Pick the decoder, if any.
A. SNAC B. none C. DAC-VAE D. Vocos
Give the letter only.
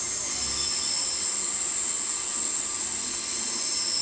B